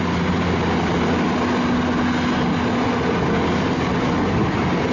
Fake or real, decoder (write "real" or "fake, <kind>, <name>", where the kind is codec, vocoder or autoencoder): real